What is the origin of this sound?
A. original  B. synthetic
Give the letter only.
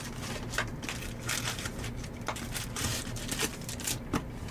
A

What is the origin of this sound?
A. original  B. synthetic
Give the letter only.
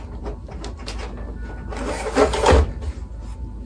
A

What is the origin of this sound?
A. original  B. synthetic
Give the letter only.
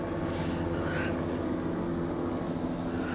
A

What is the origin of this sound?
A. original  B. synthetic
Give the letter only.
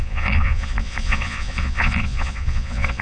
B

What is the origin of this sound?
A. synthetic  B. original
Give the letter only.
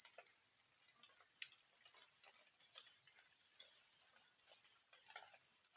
B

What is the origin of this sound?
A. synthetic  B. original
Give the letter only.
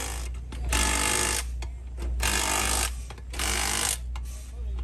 B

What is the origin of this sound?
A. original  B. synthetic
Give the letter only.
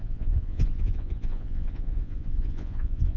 B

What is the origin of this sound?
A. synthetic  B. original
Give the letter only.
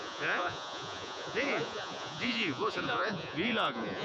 A